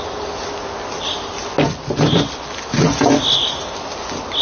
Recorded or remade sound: recorded